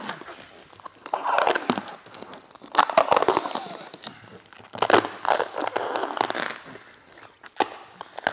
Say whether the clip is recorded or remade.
recorded